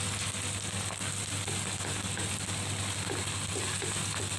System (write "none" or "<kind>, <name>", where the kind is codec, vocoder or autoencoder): none